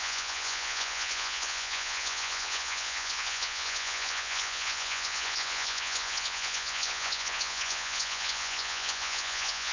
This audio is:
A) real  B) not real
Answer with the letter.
B